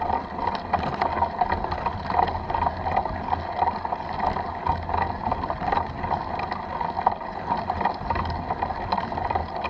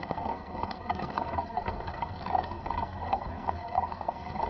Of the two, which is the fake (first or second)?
second